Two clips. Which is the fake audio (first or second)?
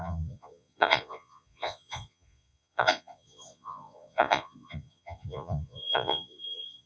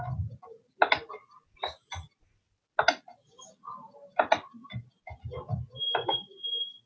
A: first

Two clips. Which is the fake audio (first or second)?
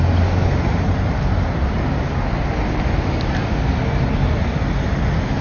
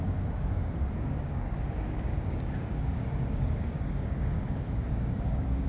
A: second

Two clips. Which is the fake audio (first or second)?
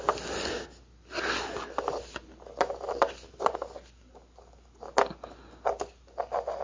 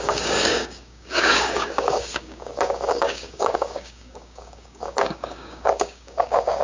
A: second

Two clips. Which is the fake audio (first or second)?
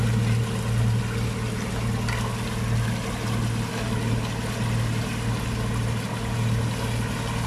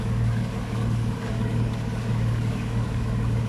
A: second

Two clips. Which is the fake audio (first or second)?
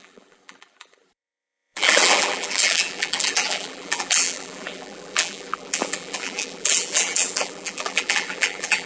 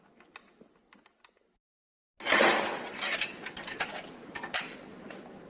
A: first